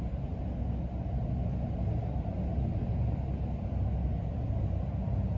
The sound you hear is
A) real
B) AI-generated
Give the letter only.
A